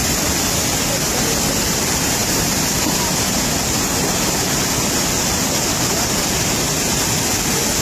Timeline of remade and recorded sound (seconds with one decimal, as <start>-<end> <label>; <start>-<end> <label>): 0.0-7.8 recorded